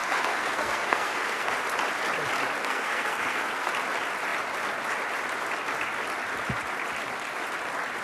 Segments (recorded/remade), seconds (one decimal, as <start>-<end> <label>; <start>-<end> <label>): 0.0-1.5 remade; 1.5-2.6 recorded; 2.6-3.7 remade; 3.7-8.0 recorded